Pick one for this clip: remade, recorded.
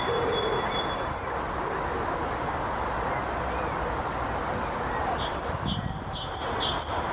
recorded